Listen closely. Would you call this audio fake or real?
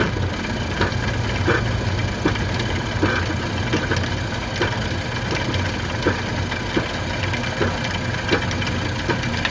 real